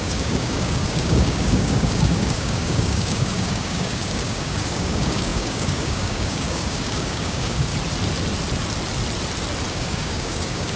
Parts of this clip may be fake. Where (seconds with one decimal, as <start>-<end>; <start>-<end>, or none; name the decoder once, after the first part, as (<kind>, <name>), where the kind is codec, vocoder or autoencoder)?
0.0-7.7 (codec, DAC); 9.7-10.8